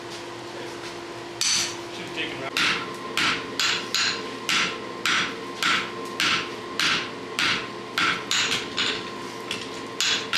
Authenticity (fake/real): real